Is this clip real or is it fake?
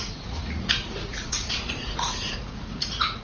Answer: fake